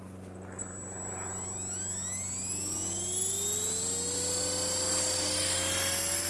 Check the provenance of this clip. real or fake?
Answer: real